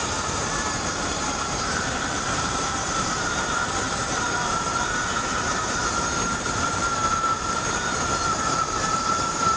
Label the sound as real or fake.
fake